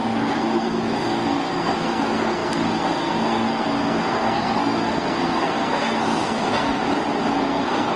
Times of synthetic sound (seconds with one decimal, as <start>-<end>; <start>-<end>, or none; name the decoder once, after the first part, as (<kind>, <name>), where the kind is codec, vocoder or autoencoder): 0.0-6.8 (codec, SNAC); 7.4-8.0

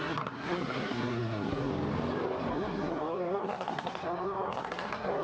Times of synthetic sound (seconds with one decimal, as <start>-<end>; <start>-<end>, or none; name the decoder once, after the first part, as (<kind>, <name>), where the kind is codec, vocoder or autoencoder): 0.0-1.7 (codec, SNAC); 2.5-5.2

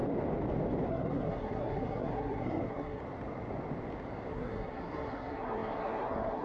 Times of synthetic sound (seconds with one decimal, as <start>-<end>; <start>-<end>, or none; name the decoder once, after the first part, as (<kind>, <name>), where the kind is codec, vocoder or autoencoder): 0.9-3.0 (codec, SNAC); 4.3-6.4

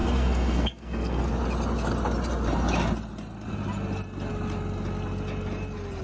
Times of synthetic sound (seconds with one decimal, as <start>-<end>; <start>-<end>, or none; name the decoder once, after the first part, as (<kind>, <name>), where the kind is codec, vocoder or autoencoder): 0.0-1.2 (codec, SNAC)

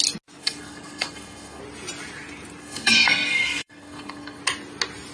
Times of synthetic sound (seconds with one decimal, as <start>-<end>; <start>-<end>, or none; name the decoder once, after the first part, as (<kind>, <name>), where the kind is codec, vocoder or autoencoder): 0.4-1.6 (codec, SNAC); 2.6-4.4

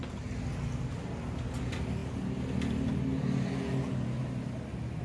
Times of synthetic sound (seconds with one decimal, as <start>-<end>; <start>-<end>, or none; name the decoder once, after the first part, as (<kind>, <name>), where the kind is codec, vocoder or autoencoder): none

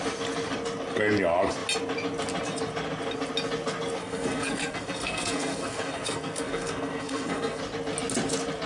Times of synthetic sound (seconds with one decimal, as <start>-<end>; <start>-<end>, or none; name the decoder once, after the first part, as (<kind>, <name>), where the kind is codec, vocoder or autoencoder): 4.0-7.6 (codec, SNAC)

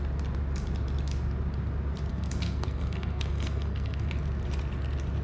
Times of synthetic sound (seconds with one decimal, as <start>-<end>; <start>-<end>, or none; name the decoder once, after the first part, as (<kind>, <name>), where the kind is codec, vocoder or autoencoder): 2.1-4.1 (codec, SNAC)